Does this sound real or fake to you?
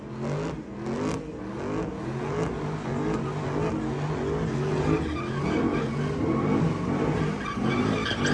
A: real